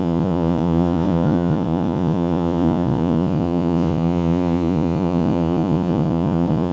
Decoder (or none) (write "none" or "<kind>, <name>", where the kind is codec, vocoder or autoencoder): vocoder, Vocos